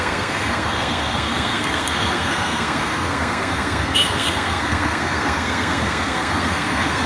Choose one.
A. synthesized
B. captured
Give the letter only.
A